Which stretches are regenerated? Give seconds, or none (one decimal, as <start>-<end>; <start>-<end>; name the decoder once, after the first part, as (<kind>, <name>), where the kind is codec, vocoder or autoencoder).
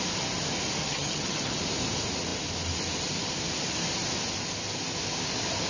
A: 0.8-1.6 (vocoder, HiFi-GAN)